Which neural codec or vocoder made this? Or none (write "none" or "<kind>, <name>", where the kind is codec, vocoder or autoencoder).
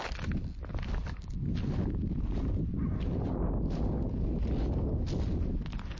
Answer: none